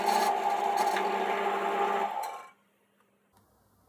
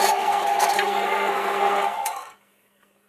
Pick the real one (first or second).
first